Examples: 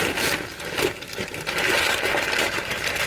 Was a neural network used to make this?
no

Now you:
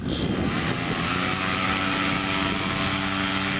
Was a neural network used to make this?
no